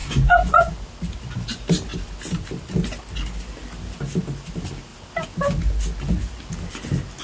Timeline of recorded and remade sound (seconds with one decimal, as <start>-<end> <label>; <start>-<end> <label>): 0.0-0.7 remade; 0.7-7.2 recorded